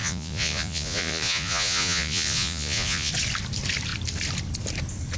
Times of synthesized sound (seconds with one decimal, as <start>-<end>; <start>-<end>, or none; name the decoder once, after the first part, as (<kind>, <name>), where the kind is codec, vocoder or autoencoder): 0.0-3.1 (vocoder, Vocos)